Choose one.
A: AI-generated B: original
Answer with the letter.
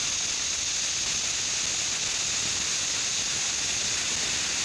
B